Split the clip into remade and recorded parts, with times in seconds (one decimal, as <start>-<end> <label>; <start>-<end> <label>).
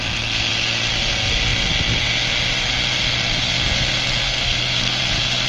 0.0-4.2 recorded; 4.2-5.0 remade; 5.0-5.5 recorded